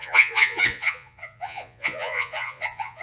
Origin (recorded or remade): remade